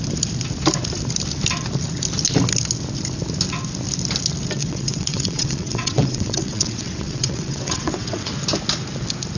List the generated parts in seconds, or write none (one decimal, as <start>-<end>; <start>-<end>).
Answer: 4.6-8.4